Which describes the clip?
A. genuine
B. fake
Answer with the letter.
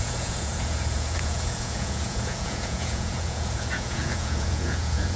B